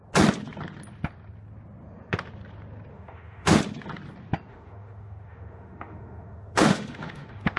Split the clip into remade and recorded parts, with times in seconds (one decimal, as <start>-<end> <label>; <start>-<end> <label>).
0.0-2.9 recorded; 2.9-3.6 remade; 3.6-4.5 recorded; 4.5-7.6 remade